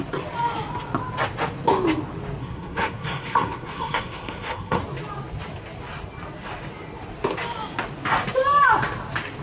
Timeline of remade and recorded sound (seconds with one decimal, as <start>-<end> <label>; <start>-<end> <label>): 0.0-2.4 recorded; 2.4-4.8 remade; 4.8-9.4 recorded